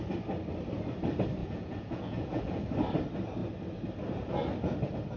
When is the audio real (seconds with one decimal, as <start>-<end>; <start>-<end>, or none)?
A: 0.0-1.4; 2.6-5.2